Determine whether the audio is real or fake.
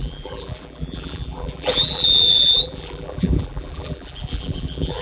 fake